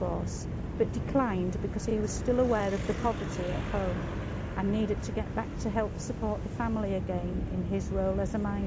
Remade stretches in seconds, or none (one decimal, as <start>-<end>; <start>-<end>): none